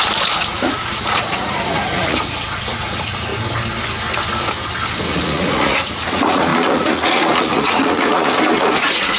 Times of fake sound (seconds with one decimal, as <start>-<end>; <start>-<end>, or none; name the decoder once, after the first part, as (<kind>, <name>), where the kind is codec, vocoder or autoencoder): 0.0-3.3 (vocoder, Vocos); 5.1-9.2